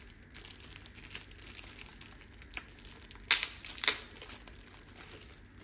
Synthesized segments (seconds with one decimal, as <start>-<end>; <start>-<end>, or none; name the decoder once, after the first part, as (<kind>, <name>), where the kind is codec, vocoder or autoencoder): none